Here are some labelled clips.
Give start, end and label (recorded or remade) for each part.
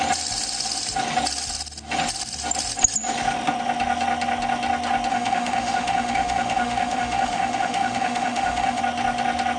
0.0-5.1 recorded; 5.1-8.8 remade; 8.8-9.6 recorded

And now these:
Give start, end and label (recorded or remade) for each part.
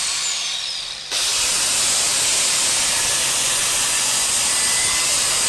0.0-3.4 recorded; 3.4-4.4 remade; 4.4-5.5 recorded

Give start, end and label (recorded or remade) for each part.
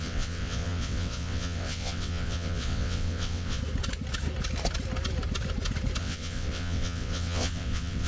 0.0-3.6 remade; 3.6-6.0 recorded; 6.0-8.1 remade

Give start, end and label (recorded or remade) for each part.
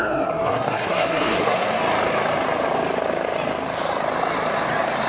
0.0-1.8 remade; 1.8-5.1 recorded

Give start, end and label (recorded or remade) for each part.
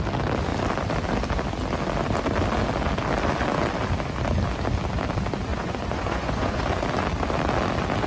0.0-5.5 recorded; 5.5-6.6 remade; 6.6-8.1 recorded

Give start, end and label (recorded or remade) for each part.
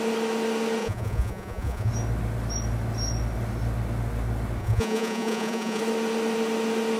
0.0-0.8 recorded; 0.8-1.9 remade; 1.9-4.6 recorded; 4.6-5.8 remade; 5.8-7.0 recorded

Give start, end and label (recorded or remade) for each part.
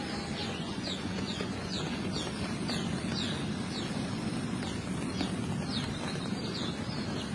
0.0-0.4 recorded; 0.4-2.1 remade; 2.1-7.3 recorded